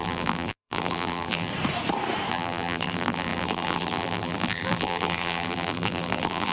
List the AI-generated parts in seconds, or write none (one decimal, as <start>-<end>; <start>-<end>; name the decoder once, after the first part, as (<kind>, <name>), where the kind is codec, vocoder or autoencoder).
0.0-1.5 (vocoder, BigVGAN v2); 2.3-6.5